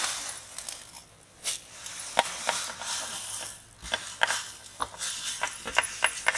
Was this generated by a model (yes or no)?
no